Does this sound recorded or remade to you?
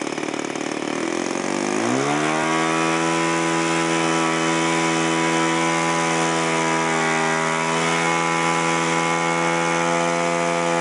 recorded